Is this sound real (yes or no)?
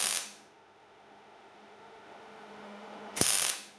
no